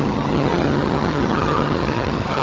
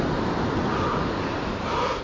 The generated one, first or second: first